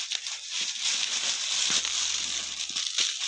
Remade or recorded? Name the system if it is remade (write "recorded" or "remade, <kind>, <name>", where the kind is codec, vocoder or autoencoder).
recorded